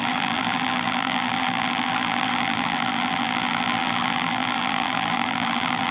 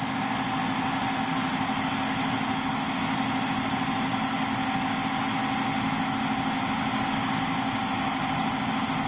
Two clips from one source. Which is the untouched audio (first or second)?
second